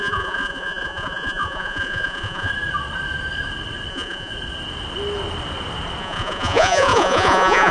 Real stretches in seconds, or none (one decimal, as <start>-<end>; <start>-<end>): 2.5-3.9; 4.3-6.0